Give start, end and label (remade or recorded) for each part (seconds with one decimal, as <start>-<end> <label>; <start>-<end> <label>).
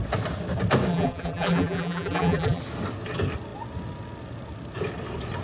0.0-0.9 recorded; 0.9-2.6 remade; 2.6-5.4 recorded